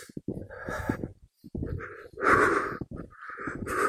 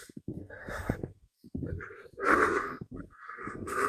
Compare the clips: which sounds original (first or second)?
first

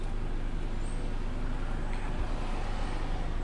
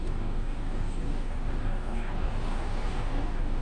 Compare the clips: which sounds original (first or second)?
first